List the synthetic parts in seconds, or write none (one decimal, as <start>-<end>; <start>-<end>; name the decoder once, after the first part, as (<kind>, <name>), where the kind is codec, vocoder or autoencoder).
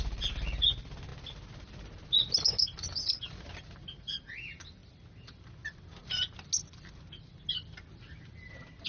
none